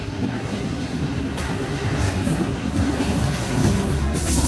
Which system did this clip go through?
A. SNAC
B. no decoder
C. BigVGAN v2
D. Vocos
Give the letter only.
A